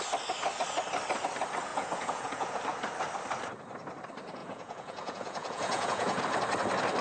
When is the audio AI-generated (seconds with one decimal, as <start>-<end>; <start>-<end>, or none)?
1.7-2.6; 4.4-6.2